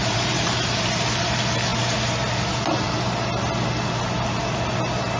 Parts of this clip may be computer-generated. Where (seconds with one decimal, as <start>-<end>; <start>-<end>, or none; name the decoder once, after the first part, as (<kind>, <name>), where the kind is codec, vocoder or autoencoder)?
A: 0.0-0.8 (vocoder, BigVGAN v2)